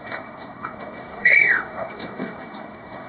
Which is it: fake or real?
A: fake